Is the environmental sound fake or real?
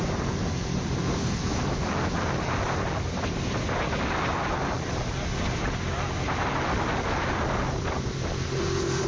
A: real